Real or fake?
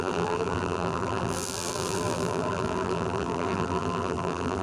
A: fake